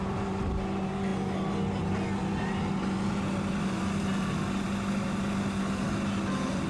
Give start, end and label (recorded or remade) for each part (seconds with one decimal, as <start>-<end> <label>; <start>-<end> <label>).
0.0-6.7 recorded